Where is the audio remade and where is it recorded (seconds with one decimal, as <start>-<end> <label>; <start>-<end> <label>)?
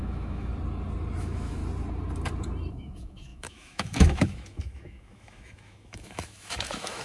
0.0-0.5 remade; 0.5-1.2 recorded; 1.2-1.6 remade; 1.6-2.7 recorded; 2.7-7.0 remade